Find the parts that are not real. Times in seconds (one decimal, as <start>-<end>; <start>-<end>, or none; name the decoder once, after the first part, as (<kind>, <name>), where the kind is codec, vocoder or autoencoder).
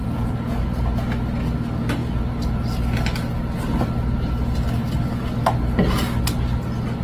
0.0-0.6 (vocoder, Vocos)